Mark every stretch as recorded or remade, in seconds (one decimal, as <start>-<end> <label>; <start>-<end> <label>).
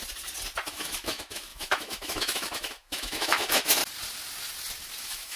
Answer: 0.0-0.7 recorded; 0.7-3.8 remade; 3.8-5.0 recorded; 5.0-5.4 remade